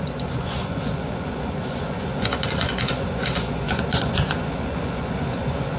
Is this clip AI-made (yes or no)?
yes